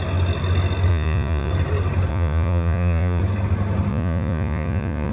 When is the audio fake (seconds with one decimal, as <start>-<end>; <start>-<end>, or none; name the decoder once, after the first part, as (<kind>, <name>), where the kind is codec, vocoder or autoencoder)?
0.9-1.5 (vocoder, Vocos); 2.1-3.2; 3.9-5.1